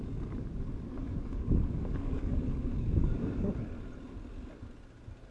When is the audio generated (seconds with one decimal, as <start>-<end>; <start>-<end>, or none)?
1.0-3.5